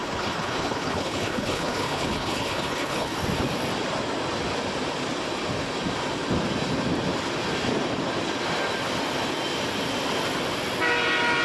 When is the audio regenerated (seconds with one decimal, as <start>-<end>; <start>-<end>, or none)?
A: 0.0-3.1